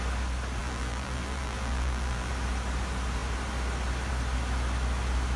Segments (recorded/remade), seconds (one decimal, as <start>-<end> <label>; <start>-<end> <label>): 0.0-0.6 recorded; 0.6-2.3 remade; 2.3-5.4 recorded